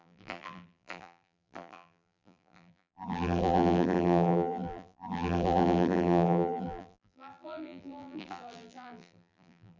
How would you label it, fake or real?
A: fake